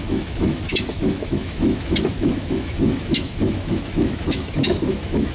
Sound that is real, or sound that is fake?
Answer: fake